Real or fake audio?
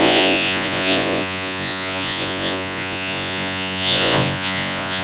fake